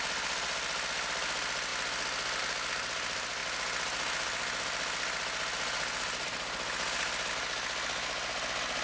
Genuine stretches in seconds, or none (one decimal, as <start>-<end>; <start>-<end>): 0.0-8.8

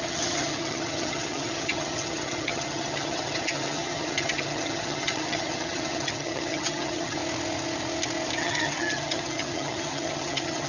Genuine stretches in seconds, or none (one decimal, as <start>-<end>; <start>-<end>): 7.2-8.4

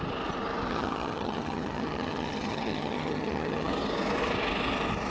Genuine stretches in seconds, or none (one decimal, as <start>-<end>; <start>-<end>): 0.0-0.7; 3.7-5.1

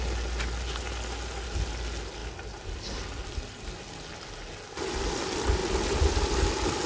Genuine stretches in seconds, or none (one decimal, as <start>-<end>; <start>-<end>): 0.0-6.9

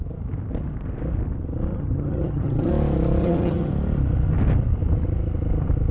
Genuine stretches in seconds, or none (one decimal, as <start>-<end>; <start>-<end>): 0.0-1.7; 2.7-3.2; 3.7-5.9